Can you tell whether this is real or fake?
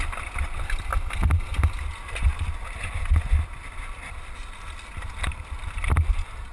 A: real